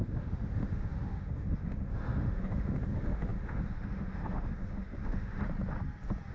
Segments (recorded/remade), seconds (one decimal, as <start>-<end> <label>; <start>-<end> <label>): 0.0-5.4 remade; 5.4-6.3 recorded